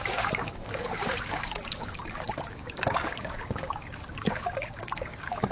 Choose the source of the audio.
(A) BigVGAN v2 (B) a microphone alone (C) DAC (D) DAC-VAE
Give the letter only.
C